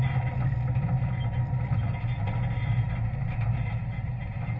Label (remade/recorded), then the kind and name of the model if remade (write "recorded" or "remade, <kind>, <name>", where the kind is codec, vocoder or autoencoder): recorded